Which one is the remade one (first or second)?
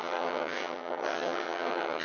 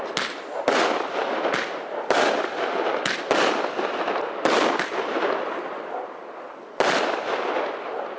first